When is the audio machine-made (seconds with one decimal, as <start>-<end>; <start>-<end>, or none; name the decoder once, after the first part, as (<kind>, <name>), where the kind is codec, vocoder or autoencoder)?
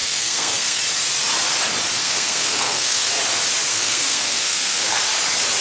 0.0-0.8 (codec, SNAC); 2.0-3.1; 3.7-5.0